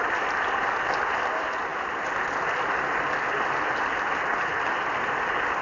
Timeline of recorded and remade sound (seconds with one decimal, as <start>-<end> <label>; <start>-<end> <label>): 0.0-5.6 recorded